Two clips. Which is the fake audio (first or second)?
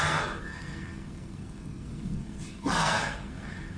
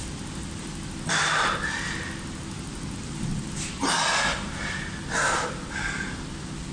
first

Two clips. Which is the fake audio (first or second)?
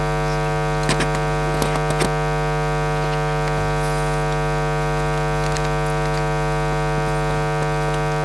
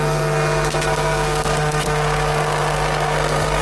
second